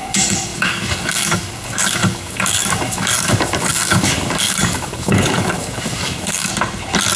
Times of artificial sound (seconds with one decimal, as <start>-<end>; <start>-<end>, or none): 0.0-6.5